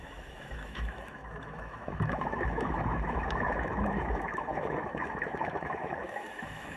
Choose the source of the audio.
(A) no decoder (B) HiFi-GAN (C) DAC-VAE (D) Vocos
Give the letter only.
C